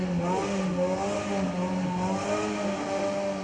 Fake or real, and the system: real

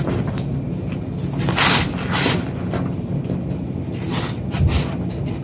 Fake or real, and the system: real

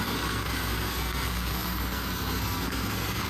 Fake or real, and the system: fake, codec, SNAC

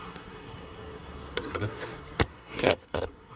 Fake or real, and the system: fake, codec, SNAC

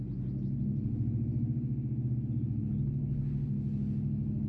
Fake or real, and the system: real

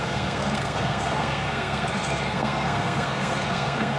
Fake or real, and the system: fake, codec, SNAC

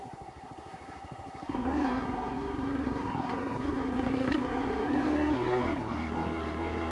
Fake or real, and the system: fake, codec, SNAC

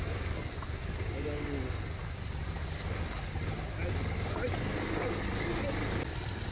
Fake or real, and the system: real